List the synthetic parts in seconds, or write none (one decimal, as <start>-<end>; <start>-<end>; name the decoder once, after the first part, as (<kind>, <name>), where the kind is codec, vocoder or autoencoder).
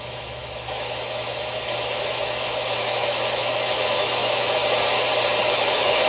0.0-4.6 (autoencoder, DAC-VAE); 5.4-6.1